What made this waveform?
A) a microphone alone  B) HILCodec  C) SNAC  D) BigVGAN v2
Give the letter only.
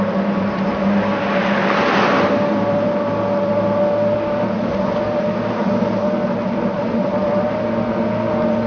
A